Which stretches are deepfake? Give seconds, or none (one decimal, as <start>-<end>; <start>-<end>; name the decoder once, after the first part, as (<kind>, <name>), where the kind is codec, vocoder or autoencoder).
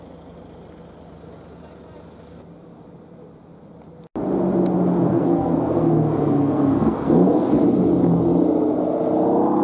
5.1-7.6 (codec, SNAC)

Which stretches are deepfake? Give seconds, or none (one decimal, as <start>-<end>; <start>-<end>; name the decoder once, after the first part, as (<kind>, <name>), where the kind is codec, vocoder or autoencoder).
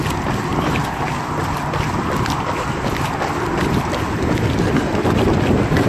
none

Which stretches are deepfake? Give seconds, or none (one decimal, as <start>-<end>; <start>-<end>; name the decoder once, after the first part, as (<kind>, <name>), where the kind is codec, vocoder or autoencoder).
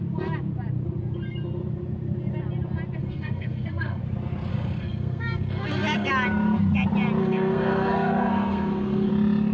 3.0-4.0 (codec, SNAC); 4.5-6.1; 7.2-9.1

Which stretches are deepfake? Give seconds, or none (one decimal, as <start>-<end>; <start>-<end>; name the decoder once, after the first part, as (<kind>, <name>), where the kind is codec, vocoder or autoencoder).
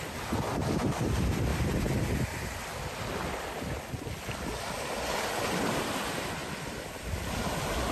none